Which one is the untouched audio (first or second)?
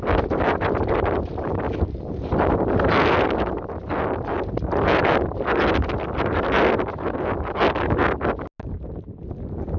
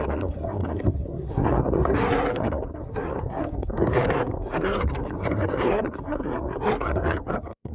first